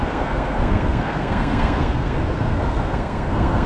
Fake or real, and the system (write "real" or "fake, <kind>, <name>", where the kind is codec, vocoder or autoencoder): fake, codec, SNAC